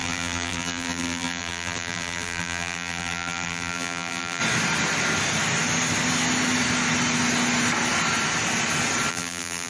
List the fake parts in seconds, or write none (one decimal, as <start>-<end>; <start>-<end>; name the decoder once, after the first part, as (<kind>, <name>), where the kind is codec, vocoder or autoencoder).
0.0-4.4 (vocoder, BigVGAN v2); 9.1-9.7